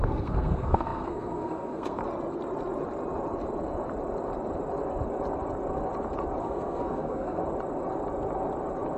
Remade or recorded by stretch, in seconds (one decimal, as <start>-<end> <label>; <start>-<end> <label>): 0.0-2.0 remade; 2.0-6.4 recorded; 6.4-7.4 remade; 7.4-9.0 recorded